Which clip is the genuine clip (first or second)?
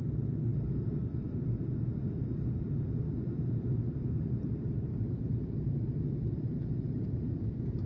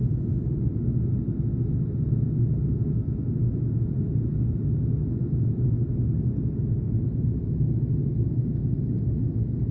second